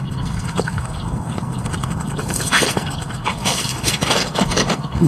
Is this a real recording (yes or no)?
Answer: no